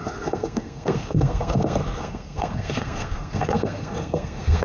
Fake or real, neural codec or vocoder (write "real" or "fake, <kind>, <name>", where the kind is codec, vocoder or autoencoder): fake, codec, SNAC